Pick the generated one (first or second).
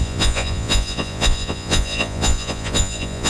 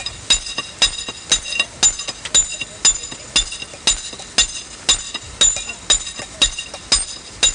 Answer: first